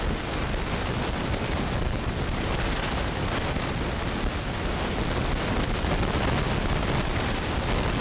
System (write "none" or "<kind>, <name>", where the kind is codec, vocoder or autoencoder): none